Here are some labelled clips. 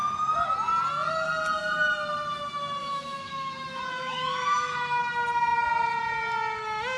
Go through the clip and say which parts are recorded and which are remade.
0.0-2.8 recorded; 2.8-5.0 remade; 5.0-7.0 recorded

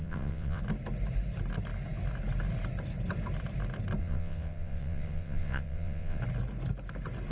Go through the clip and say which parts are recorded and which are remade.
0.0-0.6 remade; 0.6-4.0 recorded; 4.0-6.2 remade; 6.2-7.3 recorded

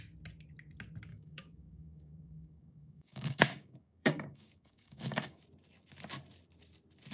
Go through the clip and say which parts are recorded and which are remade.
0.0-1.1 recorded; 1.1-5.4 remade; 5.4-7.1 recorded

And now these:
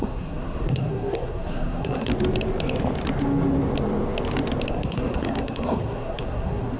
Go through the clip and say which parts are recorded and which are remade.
0.0-2.1 remade; 2.1-4.7 recorded; 4.7-6.8 remade

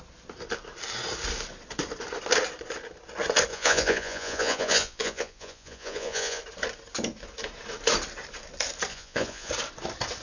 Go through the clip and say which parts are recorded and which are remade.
0.0-3.5 recorded; 3.5-6.4 remade; 6.4-8.9 recorded; 8.9-9.5 remade; 9.5-10.2 recorded

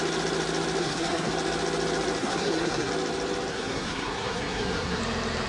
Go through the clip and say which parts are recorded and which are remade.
0.0-0.8 recorded; 0.8-1.3 remade; 1.3-2.2 recorded; 2.2-2.9 remade; 2.9-3.5 recorded; 3.5-5.0 remade; 5.0-5.5 recorded

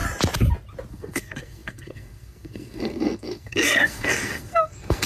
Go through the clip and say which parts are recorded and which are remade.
0.0-0.9 recorded; 0.9-5.1 remade

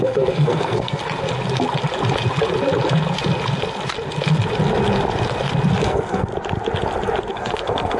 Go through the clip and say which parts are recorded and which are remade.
0.0-1.0 remade; 1.0-5.8 recorded; 5.8-6.3 remade; 6.3-7.3 recorded; 7.3-8.0 remade